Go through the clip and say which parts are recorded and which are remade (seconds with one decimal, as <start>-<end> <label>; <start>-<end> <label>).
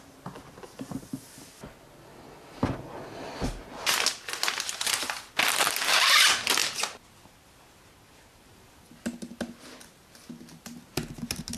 0.0-11.6 recorded